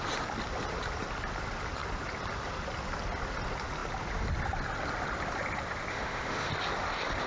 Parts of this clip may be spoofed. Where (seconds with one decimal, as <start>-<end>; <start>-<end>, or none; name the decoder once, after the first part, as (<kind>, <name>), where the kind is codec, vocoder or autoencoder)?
5.9-6.5 (autoencoder, DAC-VAE)